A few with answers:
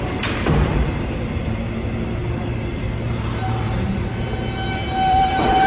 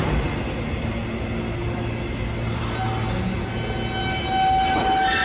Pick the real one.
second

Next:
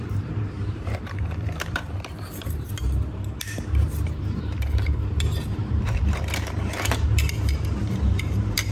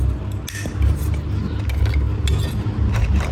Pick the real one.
second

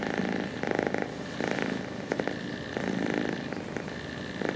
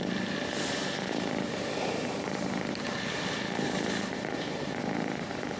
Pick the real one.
first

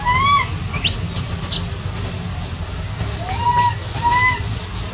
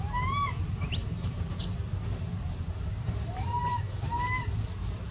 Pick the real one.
first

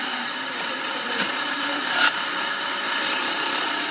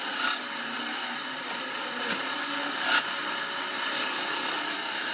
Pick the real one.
second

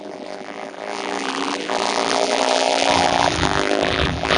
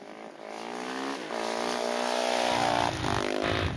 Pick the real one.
second